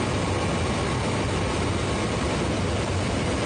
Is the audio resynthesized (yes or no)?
no